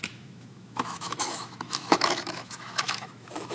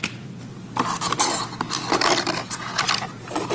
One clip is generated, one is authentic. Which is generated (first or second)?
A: first